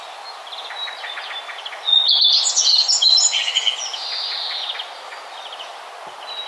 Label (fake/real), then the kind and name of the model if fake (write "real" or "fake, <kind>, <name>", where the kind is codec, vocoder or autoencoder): real